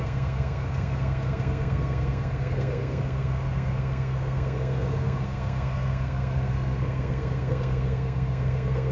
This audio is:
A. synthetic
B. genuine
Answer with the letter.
A